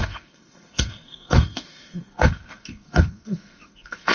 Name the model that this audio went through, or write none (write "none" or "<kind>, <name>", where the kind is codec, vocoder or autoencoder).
codec, SNAC